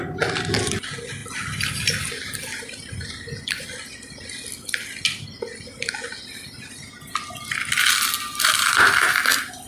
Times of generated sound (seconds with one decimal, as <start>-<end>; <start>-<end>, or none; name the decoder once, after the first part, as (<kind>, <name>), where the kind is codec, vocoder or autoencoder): none